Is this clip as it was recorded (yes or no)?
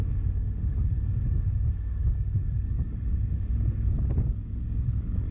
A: no